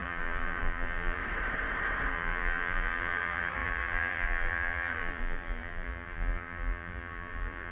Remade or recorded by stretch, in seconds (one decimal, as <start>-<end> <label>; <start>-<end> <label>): 0.0-1.2 remade; 1.2-2.1 recorded; 2.1-7.7 remade